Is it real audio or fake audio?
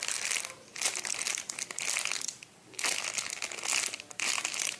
real